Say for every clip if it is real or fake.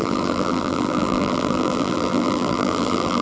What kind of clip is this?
fake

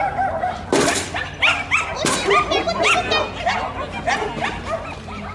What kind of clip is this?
real